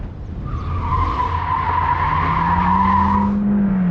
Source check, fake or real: real